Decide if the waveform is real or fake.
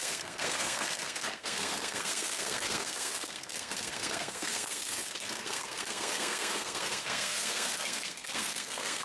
fake